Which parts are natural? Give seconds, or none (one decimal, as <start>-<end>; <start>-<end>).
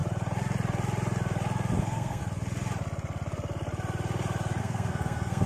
0.0-1.8; 2.2-4.6